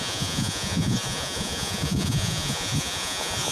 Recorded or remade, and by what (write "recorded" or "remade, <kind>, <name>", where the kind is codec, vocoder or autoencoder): remade, vocoder, Vocos